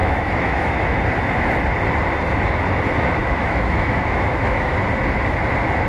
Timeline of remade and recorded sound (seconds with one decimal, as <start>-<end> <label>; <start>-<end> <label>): 0.0-1.0 remade; 1.0-3.2 recorded; 3.2-4.7 remade; 4.7-5.9 recorded